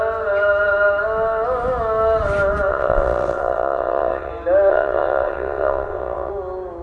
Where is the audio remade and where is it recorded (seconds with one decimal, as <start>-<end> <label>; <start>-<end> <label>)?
0.0-2.7 recorded; 2.7-4.3 remade; 4.3-4.7 recorded; 4.7-6.3 remade; 6.3-6.8 recorded